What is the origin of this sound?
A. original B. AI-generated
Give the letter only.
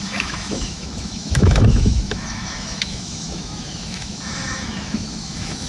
B